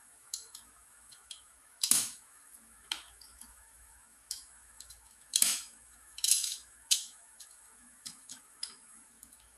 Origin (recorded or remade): remade